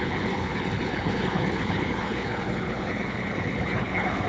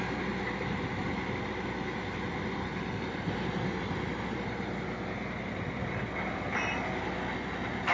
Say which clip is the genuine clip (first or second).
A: second